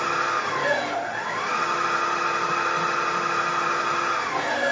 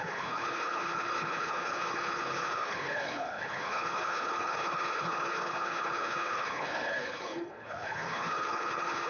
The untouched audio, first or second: first